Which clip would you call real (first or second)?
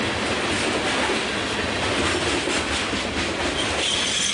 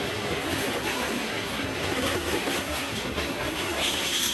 first